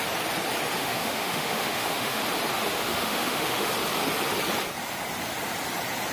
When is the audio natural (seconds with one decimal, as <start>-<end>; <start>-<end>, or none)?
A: 0.0-0.8; 2.2-2.7; 3.7-6.1